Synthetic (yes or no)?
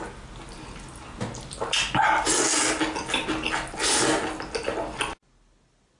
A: no